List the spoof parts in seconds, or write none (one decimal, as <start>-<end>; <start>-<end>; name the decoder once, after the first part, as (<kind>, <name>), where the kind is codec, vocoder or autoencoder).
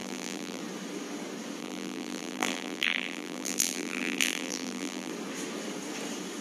0.0-0.6 (vocoder, BigVGAN v2); 1.6-5.1